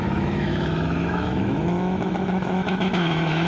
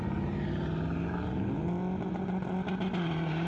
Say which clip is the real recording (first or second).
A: second